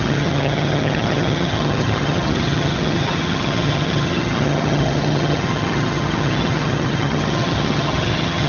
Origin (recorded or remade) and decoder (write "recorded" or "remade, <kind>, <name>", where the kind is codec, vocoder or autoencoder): remade, vocoder, HiFi-GAN